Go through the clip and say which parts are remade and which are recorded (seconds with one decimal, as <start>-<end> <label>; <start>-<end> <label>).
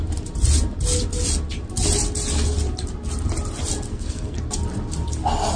0.0-3.9 recorded; 3.9-4.4 remade; 4.4-5.6 recorded